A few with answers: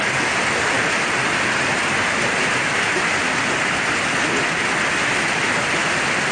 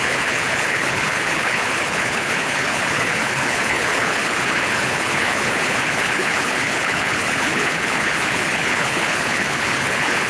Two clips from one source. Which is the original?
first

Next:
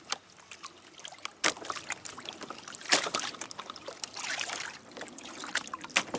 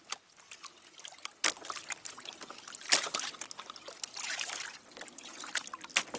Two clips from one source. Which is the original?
second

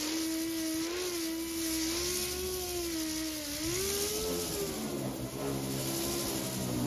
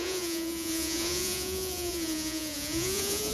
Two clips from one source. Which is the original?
first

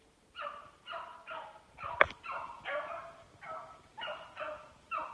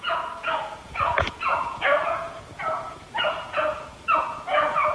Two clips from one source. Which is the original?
first